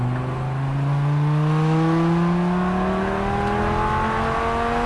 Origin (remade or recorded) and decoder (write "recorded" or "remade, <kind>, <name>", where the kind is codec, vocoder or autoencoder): recorded